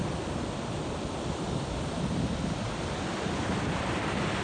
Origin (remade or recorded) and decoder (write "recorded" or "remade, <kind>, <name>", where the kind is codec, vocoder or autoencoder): recorded